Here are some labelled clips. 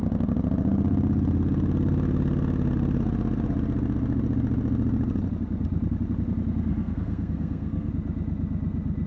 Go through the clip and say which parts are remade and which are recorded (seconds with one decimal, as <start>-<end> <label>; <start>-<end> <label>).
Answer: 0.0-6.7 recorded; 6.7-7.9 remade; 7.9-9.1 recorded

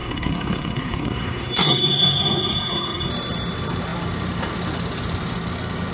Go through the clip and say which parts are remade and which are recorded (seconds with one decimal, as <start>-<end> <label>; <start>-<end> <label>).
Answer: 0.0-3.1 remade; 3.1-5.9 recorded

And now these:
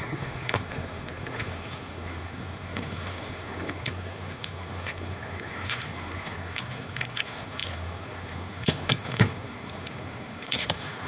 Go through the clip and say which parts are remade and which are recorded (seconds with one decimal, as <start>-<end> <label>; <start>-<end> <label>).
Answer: 0.0-11.1 remade

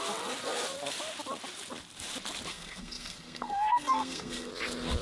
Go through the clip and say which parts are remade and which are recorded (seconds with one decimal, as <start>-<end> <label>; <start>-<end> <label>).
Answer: 0.0-2.5 recorded; 2.5-4.5 remade; 4.5-5.0 recorded

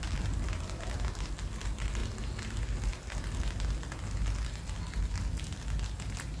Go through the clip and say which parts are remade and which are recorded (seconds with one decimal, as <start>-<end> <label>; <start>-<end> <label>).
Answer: 0.0-6.4 recorded